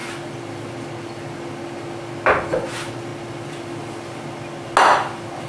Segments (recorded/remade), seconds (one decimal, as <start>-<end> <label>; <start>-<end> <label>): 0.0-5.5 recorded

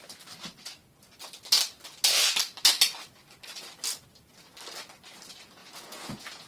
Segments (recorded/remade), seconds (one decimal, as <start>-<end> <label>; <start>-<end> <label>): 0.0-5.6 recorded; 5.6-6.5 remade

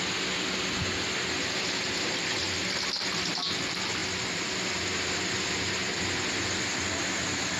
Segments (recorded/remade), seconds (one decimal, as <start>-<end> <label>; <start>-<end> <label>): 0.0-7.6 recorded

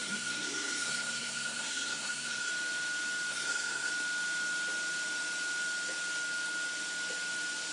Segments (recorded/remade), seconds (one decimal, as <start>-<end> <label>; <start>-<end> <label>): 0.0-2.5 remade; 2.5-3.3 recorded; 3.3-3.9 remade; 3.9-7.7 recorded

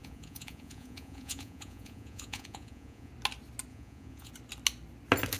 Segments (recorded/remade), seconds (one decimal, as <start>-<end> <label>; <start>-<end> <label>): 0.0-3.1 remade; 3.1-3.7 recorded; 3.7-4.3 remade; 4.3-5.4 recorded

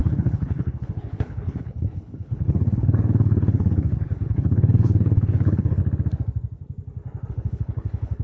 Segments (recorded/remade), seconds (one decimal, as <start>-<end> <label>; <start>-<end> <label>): 0.0-5.8 remade; 5.8-7.3 recorded; 7.3-8.2 remade

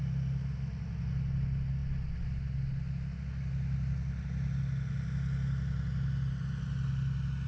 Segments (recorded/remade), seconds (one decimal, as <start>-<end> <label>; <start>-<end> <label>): 0.0-7.5 recorded